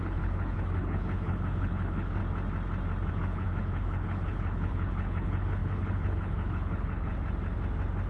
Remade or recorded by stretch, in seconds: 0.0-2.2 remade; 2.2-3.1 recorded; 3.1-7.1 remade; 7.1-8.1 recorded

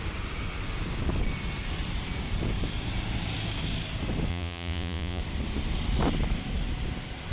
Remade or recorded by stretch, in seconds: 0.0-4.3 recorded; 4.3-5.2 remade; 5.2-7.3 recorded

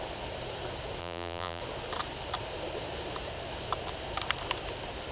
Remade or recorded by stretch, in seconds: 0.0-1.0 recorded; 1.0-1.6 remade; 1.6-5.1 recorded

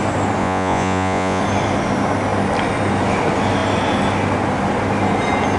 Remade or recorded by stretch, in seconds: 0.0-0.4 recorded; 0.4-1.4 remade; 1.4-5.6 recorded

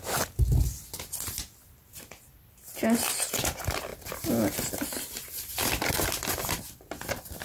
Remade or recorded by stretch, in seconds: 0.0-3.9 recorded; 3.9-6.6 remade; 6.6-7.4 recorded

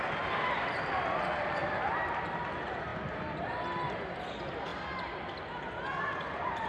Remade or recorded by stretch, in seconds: 0.0-6.7 recorded

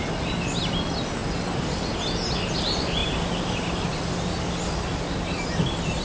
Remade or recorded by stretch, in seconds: 0.0-6.0 recorded